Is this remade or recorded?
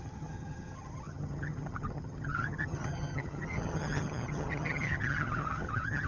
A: remade